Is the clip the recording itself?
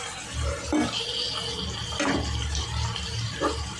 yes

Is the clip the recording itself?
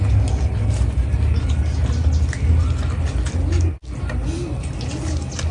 yes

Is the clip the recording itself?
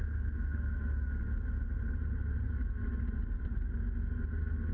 yes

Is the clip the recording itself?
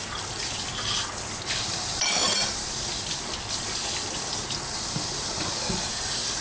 yes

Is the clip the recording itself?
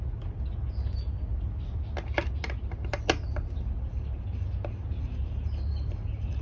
yes